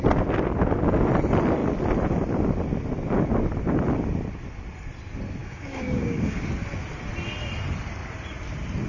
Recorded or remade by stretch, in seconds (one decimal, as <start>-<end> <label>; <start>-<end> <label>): 0.0-5.4 recorded; 5.4-6.4 remade; 6.4-8.9 recorded